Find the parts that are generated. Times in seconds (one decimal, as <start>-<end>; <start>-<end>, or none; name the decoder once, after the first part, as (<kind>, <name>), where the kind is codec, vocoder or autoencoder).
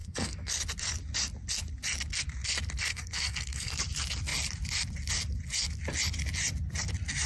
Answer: 0.0-0.5 (codec, SNAC); 2.9-3.8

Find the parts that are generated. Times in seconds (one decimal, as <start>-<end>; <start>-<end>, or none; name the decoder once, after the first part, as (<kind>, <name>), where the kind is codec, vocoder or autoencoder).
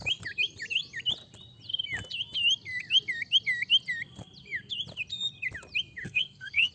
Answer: 6.0-6.7 (codec, SNAC)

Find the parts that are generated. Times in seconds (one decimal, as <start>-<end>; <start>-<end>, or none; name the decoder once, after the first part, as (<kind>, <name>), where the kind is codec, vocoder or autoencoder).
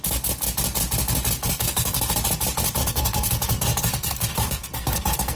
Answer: 1.4-2.1 (codec, SNAC); 2.8-5.4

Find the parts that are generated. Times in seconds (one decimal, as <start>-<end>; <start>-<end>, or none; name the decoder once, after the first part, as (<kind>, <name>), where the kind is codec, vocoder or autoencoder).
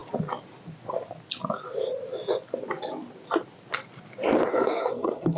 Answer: 4.5-5.4 (codec, SNAC)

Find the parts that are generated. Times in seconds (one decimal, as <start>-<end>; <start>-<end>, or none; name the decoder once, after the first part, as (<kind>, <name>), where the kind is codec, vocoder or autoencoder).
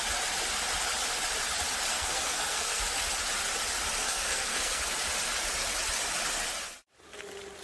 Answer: 1.9-2.8 (codec, SNAC); 4.0-4.8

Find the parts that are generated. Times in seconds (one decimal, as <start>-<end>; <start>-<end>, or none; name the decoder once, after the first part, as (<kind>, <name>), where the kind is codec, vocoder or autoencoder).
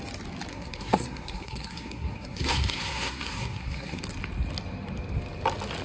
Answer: 0.5-4.0 (codec, SNAC)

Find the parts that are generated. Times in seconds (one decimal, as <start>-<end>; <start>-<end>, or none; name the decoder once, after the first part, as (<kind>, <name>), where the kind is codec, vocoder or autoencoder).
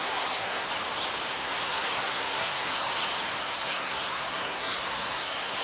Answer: 0.0-0.7 (codec, SNAC); 1.3-2.9; 3.4-5.6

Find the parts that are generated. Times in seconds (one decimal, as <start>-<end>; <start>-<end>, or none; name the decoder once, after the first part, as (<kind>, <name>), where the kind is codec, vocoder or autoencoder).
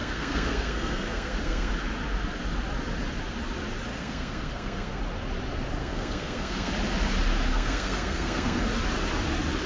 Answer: 0.0-1.7 (codec, SNAC); 3.9-5.0; 5.8-6.7; 7.5-8.6